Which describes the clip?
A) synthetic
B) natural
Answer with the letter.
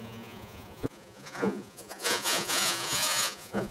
A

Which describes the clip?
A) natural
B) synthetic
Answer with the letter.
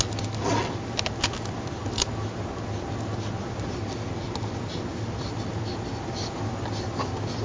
A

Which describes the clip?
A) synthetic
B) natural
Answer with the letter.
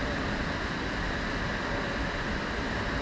B